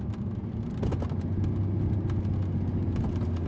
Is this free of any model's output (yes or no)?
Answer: yes